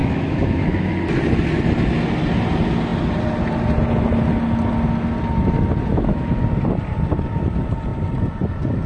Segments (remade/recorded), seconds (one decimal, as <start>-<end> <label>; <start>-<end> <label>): 0.0-0.9 remade; 0.9-5.9 recorded; 5.9-6.4 remade; 6.4-8.9 recorded